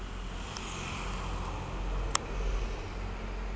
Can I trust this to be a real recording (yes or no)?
yes